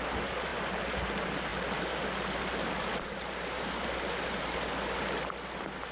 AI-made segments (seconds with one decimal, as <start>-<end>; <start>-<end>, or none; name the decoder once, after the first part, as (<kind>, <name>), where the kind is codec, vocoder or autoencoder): none